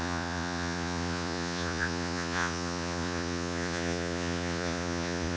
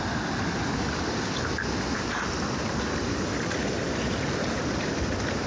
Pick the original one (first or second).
second